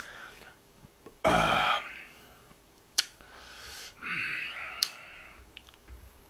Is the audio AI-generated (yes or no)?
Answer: yes